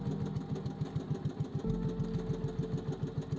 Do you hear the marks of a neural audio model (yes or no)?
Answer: no